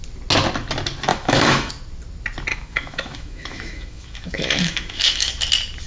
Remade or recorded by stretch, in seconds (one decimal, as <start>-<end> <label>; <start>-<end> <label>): 0.0-1.1 recorded; 1.1-1.7 remade; 1.7-2.5 recorded; 2.5-5.3 remade; 5.3-5.9 recorded